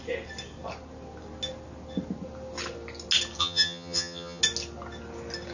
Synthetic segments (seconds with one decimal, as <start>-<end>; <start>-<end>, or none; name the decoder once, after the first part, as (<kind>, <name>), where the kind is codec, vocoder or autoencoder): 3.4-4.4 (vocoder, HiFi-GAN)